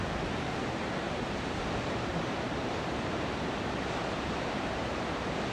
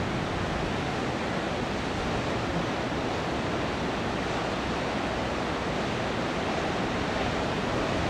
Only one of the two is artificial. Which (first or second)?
first